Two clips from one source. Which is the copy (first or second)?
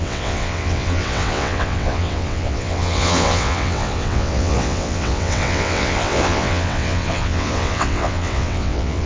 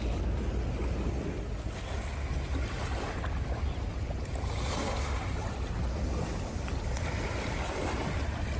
first